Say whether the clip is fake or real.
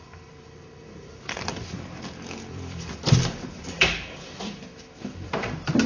fake